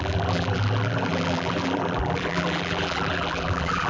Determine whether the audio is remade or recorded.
remade